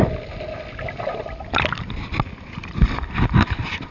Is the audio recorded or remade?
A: recorded